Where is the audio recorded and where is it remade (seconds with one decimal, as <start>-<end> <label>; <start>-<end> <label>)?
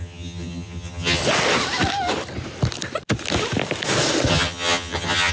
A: 0.0-1.2 remade; 1.2-4.3 recorded; 4.3-5.3 remade